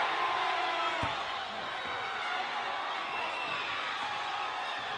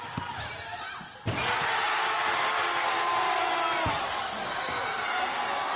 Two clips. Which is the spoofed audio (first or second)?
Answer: first